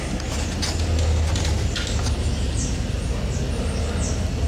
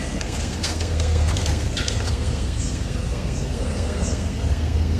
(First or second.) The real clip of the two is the first